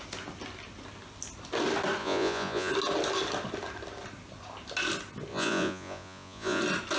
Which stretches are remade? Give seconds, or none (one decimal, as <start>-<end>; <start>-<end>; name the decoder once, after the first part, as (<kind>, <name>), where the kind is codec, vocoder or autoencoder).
2.0-2.7 (vocoder, Vocos); 5.3-6.6